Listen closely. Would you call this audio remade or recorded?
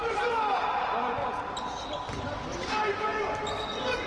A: recorded